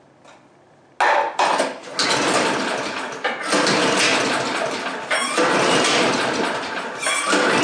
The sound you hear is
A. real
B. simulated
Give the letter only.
A